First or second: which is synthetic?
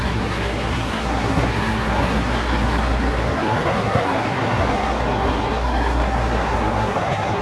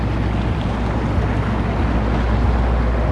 first